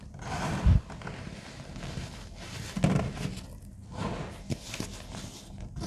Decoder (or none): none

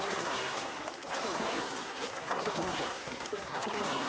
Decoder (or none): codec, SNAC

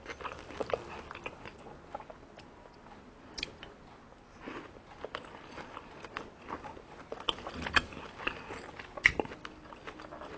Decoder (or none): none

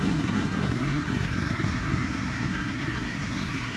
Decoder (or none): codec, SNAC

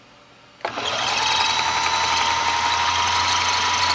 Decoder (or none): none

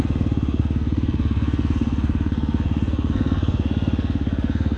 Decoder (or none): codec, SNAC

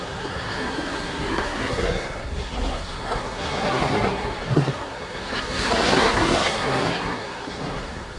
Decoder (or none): codec, SNAC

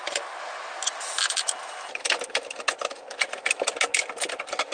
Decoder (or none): none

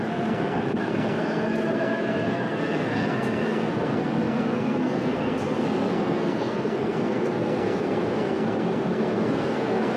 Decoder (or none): codec, SNAC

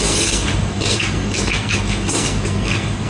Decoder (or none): codec, SNAC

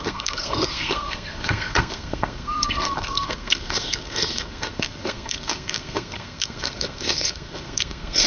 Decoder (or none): codec, SNAC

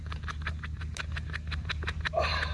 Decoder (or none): none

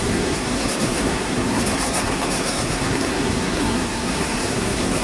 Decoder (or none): codec, SNAC